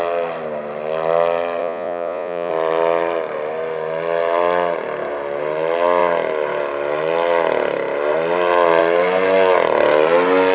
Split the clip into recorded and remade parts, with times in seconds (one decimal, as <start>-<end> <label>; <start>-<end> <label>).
0.0-1.6 recorded; 1.6-2.5 remade; 2.5-10.5 recorded